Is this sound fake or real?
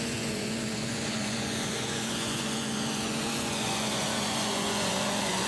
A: fake